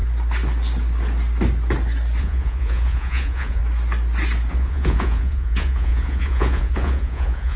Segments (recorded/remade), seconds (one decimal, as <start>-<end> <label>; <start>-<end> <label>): 0.0-2.2 recorded; 2.2-3.6 remade; 3.6-4.5 recorded; 4.5-7.6 remade